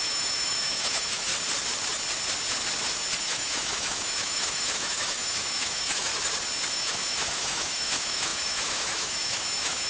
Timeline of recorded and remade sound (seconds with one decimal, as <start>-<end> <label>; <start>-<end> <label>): 0.0-1.3 remade; 1.3-3.2 recorded; 3.2-6.1 remade; 6.1-6.7 recorded; 6.7-9.9 remade

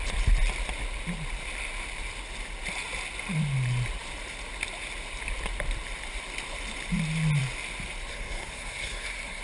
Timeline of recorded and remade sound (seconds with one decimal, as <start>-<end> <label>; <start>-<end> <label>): 0.0-8.1 recorded; 8.1-9.4 remade

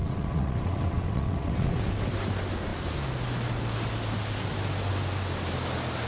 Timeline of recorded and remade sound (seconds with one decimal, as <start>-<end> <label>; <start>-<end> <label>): 0.0-1.8 remade; 1.8-6.1 recorded